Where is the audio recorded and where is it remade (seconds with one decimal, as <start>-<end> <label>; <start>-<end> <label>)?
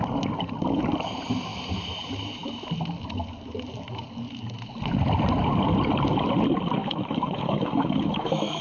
0.0-6.8 recorded; 6.8-8.6 remade